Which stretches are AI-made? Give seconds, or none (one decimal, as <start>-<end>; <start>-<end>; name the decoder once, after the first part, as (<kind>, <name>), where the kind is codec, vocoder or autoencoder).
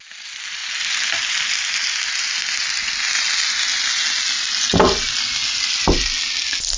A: none